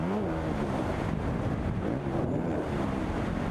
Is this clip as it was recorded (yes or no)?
yes